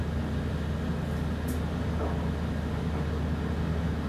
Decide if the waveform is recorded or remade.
recorded